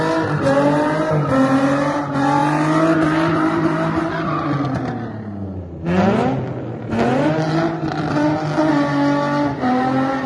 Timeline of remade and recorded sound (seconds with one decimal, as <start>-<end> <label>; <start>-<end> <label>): 0.0-10.3 recorded